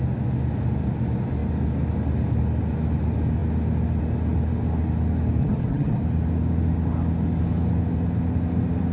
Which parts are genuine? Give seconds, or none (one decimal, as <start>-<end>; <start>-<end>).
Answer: 0.0-5.4; 6.0-8.9